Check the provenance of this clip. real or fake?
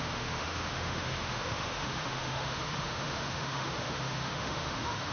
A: fake